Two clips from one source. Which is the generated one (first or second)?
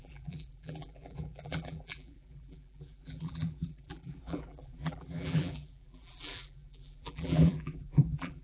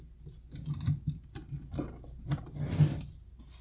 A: first